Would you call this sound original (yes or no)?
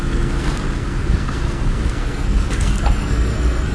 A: no